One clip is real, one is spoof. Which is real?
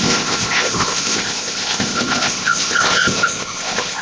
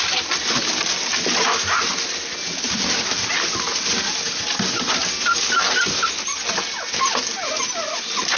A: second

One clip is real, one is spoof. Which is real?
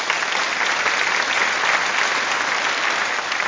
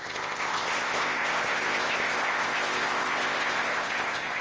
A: first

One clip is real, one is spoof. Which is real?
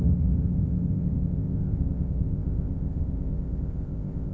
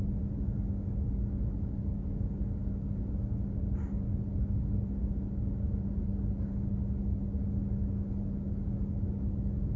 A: second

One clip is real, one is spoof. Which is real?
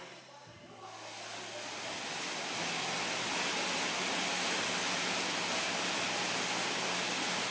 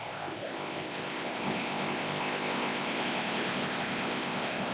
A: first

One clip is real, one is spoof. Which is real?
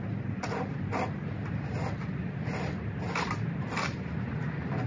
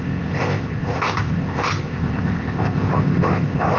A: first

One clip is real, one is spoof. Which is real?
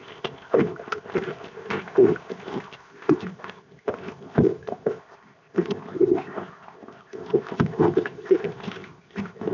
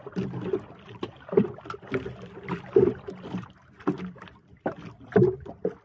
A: second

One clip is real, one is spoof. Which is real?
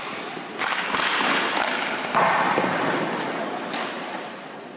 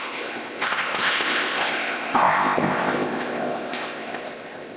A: first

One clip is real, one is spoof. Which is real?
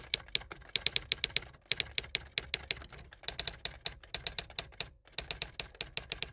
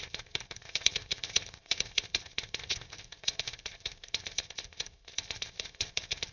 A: first